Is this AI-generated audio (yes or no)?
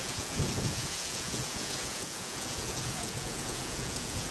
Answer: yes